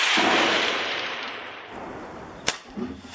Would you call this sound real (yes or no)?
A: no